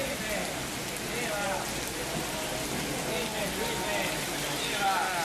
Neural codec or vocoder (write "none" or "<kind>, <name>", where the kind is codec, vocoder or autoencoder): none